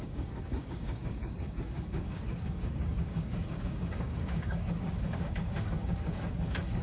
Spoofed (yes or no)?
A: yes